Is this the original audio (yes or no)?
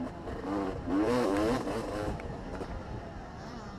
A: no